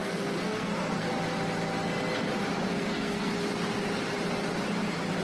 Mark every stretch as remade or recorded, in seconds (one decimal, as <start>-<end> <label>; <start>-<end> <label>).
0.0-1.1 remade; 1.1-2.7 recorded; 2.7-3.3 remade; 3.3-5.2 recorded